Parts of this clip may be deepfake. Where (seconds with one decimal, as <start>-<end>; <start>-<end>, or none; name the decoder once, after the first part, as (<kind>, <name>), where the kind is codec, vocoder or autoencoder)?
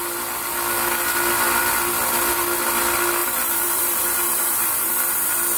3.2-4.9 (vocoder, BigVGAN v2)